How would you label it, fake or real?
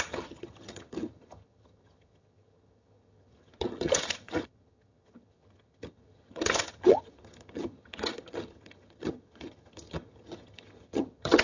fake